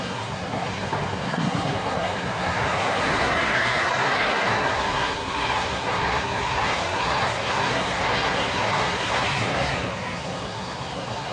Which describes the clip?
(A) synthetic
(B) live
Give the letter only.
A